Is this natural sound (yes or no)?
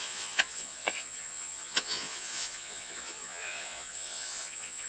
no